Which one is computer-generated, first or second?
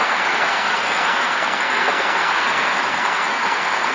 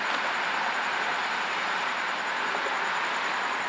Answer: first